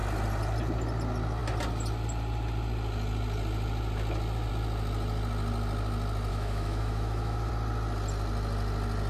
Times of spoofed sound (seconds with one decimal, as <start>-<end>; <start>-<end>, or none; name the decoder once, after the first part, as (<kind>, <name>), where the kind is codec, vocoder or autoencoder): 6.3-7.5 (autoencoder, DAC-VAE)